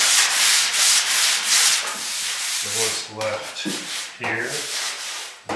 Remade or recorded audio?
remade